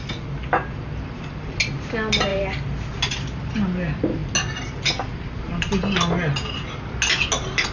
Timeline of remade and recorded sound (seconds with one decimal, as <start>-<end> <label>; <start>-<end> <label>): 0.0-7.7 recorded